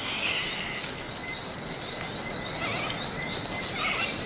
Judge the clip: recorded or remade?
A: recorded